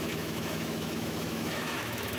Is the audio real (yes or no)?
no